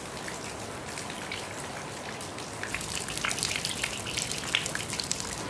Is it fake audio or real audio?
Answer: real